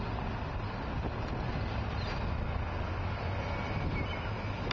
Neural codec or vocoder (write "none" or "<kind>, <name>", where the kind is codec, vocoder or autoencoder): none